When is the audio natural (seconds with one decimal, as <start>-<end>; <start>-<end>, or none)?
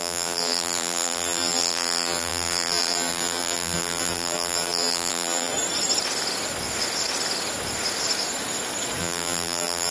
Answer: 5.5-9.0